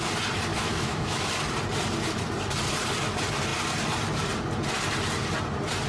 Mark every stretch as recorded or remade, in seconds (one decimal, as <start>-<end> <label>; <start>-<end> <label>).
0.0-0.5 recorded; 0.5-1.2 remade; 1.2-5.9 recorded